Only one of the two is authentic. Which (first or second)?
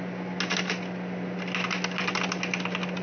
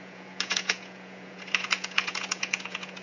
first